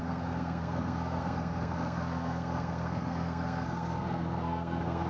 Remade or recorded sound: remade